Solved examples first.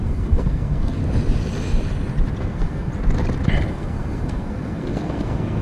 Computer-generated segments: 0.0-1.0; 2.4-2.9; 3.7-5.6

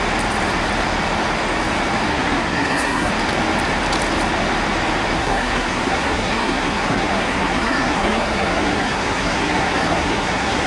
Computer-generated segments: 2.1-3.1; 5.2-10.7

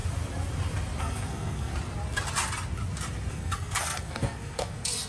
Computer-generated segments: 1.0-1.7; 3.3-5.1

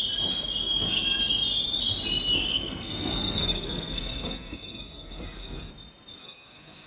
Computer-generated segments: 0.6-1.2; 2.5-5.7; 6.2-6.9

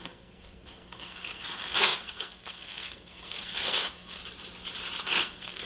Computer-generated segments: 0.0-4.2; 5.0-5.7

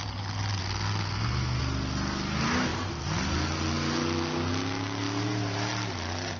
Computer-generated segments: 0.6-1.6

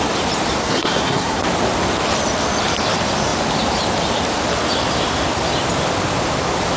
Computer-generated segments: 0.6-1.4